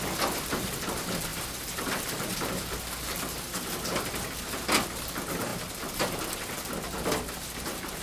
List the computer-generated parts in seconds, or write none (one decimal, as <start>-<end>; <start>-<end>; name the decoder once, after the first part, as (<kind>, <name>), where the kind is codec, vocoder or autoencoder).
1.3-4.5 (vocoder, BigVGAN v2)